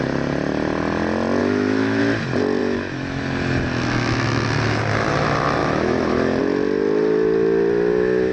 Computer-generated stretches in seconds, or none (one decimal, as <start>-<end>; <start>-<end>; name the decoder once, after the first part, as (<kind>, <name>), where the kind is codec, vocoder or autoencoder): 1.4-2.0 (autoencoder, DAC-VAE); 2.6-3.2; 5.6-6.4